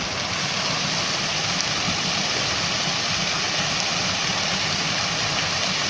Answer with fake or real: real